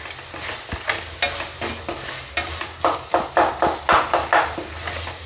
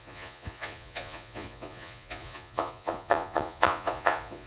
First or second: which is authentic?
first